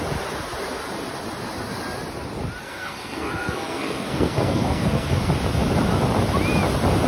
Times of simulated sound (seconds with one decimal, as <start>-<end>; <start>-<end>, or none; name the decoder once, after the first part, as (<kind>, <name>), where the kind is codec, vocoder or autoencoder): 2.6-5.3 (codec, SNAC)